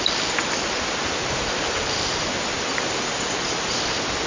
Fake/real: real